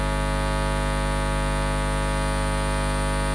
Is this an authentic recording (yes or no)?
yes